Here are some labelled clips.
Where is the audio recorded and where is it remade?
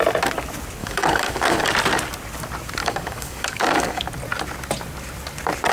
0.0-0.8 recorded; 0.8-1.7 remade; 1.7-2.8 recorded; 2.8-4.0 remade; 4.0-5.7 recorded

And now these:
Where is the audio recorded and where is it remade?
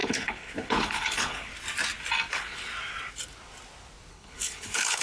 0.0-1.5 remade; 1.5-2.3 recorded; 2.3-2.7 remade; 2.7-4.1 recorded; 4.1-5.0 remade